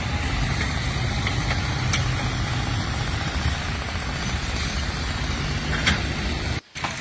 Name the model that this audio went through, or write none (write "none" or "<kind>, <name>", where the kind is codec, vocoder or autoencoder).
none